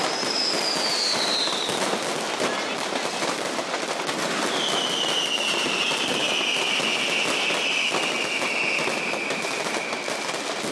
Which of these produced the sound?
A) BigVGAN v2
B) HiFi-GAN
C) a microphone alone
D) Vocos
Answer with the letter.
C